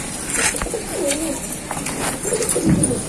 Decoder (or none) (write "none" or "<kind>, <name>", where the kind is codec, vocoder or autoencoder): none